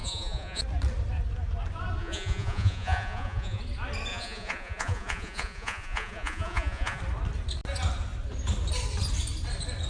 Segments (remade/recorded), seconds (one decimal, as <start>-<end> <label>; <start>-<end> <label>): 0.0-0.6 remade; 0.6-2.0 recorded; 2.0-3.6 remade; 3.6-4.1 recorded; 4.1-7.0 remade; 7.0-9.9 recorded